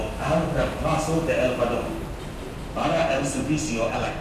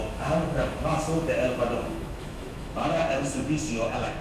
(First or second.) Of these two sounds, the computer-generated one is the second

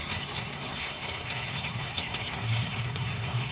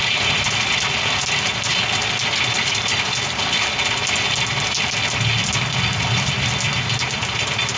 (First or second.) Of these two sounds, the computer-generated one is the first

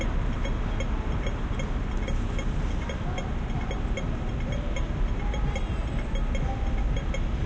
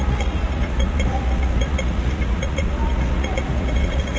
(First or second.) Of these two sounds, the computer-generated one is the second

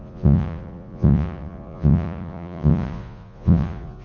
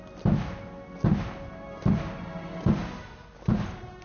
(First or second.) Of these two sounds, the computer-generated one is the first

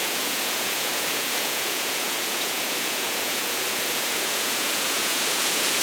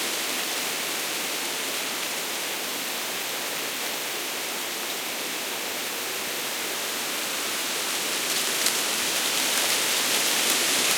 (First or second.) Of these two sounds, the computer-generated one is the first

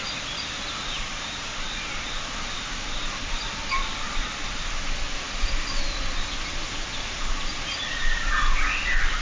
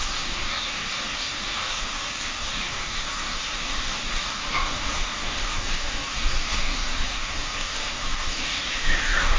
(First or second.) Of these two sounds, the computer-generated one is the second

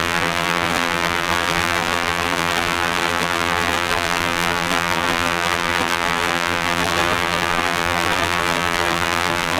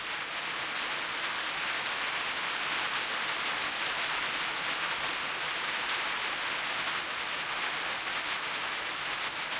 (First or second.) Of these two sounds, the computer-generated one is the first